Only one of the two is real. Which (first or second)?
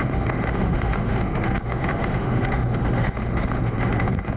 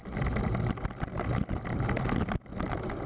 second